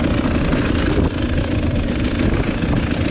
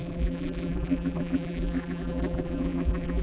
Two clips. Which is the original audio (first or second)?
first